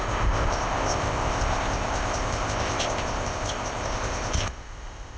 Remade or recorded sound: remade